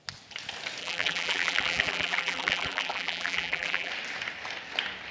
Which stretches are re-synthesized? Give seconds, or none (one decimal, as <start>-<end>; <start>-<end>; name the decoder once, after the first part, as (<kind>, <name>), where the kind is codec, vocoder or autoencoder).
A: 0.8-3.9 (vocoder, BigVGAN v2)